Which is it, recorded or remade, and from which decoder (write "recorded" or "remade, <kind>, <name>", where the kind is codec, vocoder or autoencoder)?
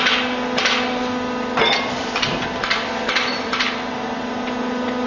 recorded